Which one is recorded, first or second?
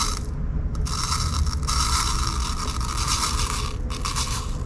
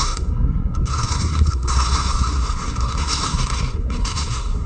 first